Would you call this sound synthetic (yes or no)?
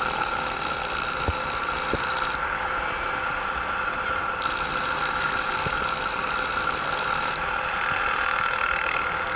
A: no